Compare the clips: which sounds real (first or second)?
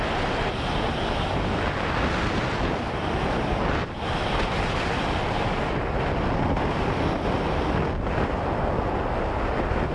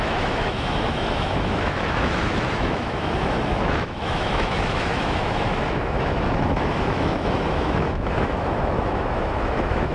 first